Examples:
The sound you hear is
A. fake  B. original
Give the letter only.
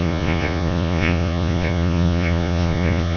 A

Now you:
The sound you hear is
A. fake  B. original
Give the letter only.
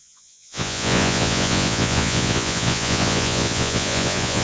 A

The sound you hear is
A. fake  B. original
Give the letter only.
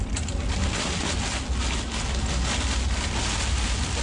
B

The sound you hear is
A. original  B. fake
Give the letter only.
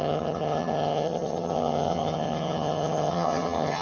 B